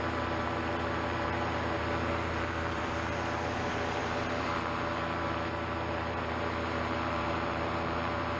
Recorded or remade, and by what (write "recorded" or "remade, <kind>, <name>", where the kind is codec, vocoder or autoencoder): remade, vocoder, BigVGAN v2